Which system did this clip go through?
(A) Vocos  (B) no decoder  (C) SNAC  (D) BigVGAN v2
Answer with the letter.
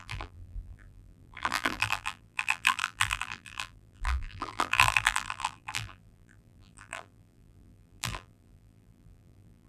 D